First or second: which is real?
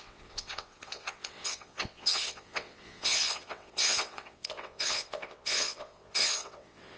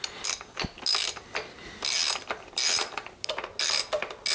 second